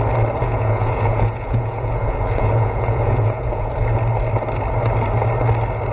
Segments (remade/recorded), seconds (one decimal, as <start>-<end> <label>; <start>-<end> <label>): 0.0-0.4 recorded; 0.4-3.7 remade; 3.7-5.9 recorded